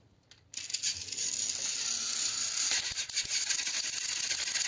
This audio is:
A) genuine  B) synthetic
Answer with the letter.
A